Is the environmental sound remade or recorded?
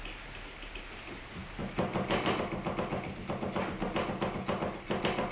recorded